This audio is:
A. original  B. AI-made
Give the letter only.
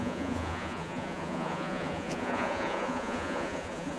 B